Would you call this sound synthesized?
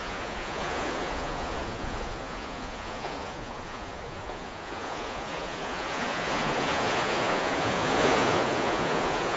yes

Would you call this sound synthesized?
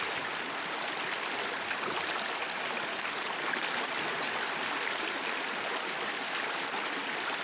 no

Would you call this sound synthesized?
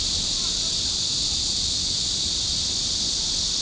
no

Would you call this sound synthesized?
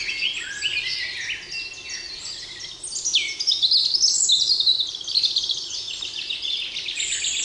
no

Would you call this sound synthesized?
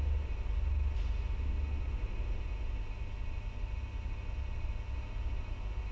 no